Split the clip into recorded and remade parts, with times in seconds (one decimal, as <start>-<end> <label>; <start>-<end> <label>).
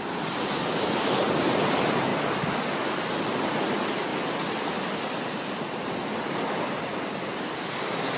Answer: 0.0-8.2 recorded